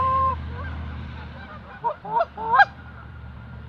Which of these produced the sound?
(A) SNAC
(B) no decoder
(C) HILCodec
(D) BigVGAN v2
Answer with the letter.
D